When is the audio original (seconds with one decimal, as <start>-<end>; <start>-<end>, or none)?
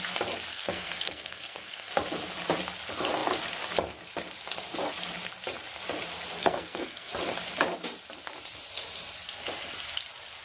0.0-0.5; 1.9-6.4; 7.1-10.4